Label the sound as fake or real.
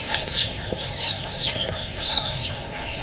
fake